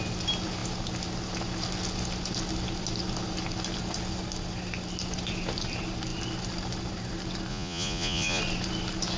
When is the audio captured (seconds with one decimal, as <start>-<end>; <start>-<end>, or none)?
0.0-7.5; 8.4-9.2